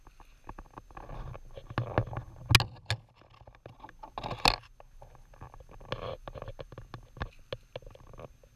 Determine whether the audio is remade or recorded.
recorded